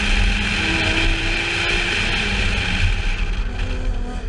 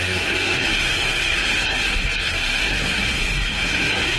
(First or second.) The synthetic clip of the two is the second